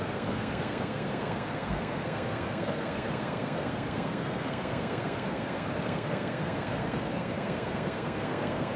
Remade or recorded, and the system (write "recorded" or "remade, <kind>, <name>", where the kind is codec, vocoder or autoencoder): remade, codec, SNAC